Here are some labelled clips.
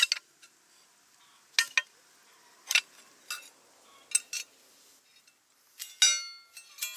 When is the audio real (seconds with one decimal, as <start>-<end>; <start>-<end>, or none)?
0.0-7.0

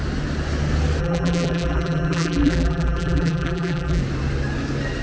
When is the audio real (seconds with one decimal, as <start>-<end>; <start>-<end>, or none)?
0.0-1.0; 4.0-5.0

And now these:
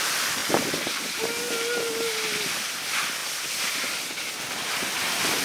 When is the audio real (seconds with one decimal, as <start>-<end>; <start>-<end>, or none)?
0.0-5.4

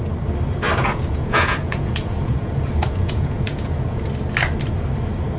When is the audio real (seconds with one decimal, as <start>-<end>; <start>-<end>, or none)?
0.0-0.8; 4.0-5.4

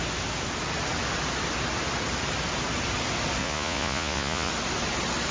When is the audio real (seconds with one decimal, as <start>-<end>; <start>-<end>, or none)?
0.0-3.4; 4.5-5.3

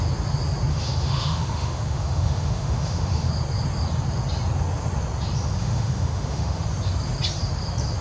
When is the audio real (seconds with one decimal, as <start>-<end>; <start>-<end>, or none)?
0.0-0.7; 3.3-5.6; 6.6-8.0